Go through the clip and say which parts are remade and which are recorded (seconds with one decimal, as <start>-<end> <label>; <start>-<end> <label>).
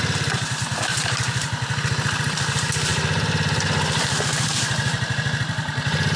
0.0-6.2 remade